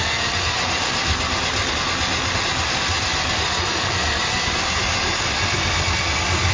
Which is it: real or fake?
real